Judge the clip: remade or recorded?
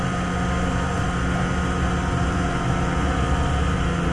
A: recorded